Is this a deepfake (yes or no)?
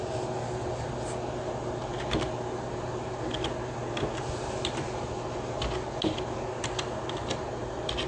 no